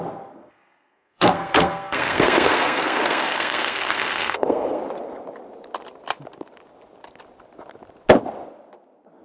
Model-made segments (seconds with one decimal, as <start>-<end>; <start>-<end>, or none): 0.4-4.8